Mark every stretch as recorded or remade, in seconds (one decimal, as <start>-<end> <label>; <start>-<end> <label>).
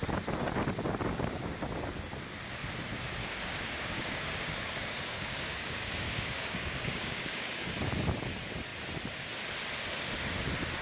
0.0-1.1 recorded; 1.1-1.6 remade; 1.6-3.2 recorded; 3.2-7.7 remade; 7.7-10.8 recorded